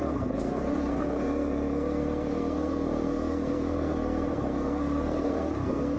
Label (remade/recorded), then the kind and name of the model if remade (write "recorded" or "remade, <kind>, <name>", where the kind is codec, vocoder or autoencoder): remade, codec, SNAC